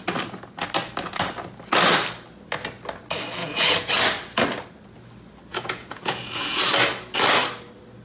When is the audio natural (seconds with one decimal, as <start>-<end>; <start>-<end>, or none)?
0.0-3.4; 3.9-5.5; 6.6-8.0